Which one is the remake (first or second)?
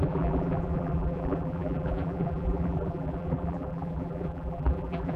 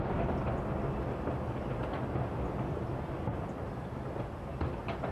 first